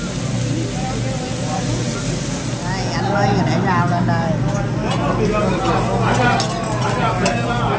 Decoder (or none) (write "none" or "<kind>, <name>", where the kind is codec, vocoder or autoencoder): none